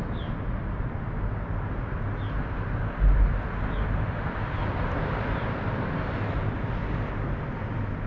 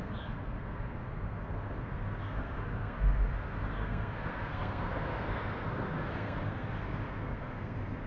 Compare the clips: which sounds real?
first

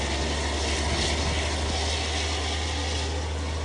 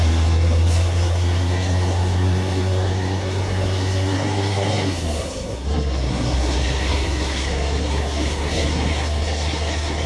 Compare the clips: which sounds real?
first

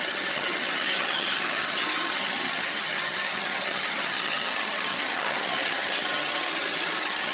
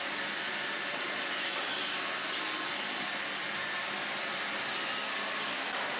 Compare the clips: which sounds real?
second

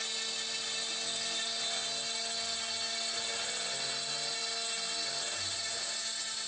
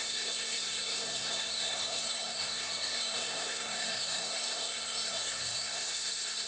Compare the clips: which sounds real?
first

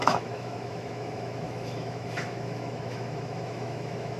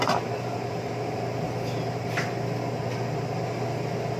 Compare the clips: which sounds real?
second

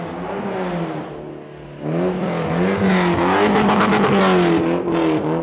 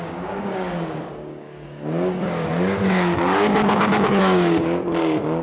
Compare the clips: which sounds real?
first